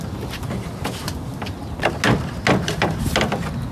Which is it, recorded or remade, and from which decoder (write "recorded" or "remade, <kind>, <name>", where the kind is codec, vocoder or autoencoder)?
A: recorded